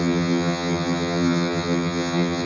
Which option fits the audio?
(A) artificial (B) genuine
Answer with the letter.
A